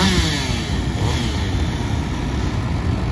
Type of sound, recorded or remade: recorded